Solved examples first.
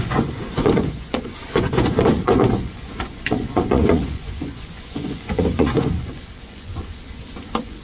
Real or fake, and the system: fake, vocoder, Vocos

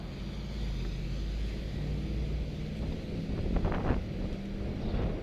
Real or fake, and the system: real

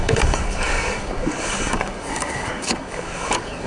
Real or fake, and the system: fake, codec, DAC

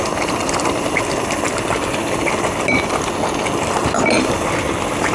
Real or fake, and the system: real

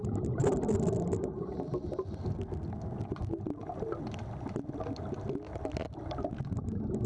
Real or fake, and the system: real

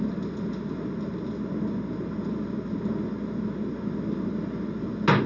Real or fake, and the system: real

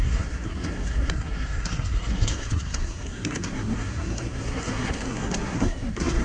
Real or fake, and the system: fake, codec, SNAC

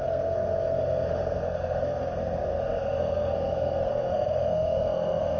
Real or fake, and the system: fake, codec, SNAC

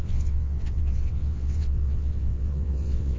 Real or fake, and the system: fake, vocoder, WaveNeXt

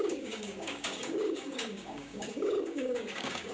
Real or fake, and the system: fake, codec, DAC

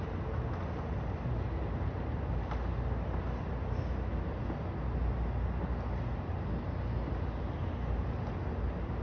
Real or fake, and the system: real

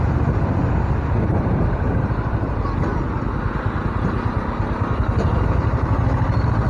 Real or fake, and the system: real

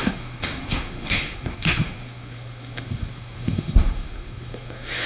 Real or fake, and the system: fake, codec, SNAC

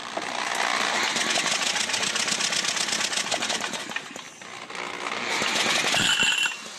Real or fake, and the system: real